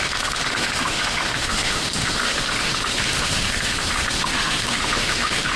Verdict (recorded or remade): remade